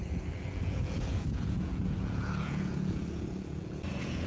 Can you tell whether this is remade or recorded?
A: remade